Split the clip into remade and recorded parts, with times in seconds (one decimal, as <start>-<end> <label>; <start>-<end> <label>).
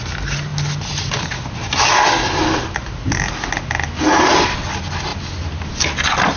0.0-6.4 recorded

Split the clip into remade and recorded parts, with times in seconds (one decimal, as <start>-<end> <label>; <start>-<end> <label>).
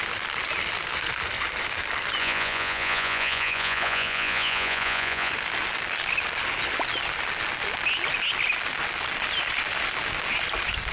0.0-2.2 recorded; 2.2-5.3 remade; 5.3-10.9 recorded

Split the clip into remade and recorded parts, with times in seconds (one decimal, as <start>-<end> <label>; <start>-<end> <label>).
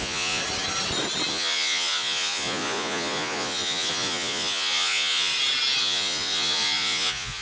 0.0-0.4 remade; 0.4-1.3 recorded; 1.3-5.3 remade; 5.3-5.8 recorded; 5.8-7.4 remade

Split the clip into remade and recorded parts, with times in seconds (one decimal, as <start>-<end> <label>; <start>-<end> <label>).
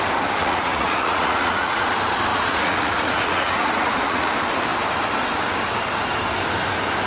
0.0-0.4 recorded; 0.4-1.9 remade; 1.9-2.3 recorded; 2.3-4.3 remade; 4.3-7.1 recorded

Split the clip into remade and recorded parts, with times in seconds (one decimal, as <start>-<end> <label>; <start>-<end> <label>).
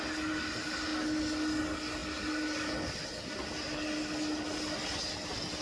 0.0-5.6 recorded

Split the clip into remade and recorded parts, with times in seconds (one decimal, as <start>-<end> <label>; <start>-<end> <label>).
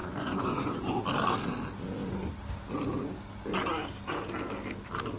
0.0-1.0 remade; 1.0-5.2 recorded